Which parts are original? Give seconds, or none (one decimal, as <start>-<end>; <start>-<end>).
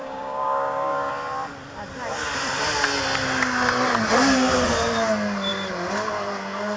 1.1-6.8